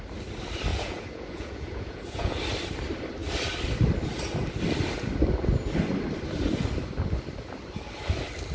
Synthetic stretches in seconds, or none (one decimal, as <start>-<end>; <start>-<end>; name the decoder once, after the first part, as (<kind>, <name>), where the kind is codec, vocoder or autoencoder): 0.7-2.4 (vocoder, Vocos)